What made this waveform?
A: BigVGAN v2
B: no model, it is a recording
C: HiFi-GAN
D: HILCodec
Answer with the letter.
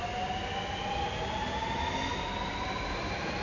B